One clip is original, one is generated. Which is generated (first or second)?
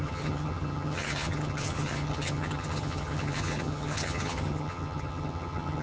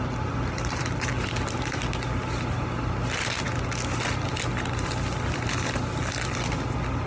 first